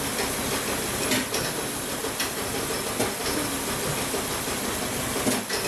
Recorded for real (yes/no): yes